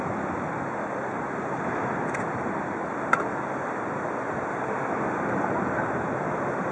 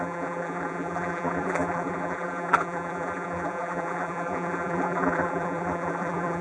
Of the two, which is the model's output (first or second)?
second